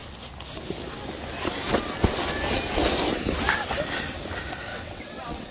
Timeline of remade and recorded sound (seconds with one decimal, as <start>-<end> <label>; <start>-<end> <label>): 0.0-4.7 recorded; 4.7-5.5 remade